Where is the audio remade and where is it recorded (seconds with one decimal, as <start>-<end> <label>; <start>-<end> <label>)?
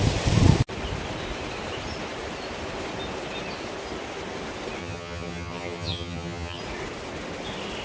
0.0-4.8 recorded; 4.8-6.6 remade; 6.6-7.8 recorded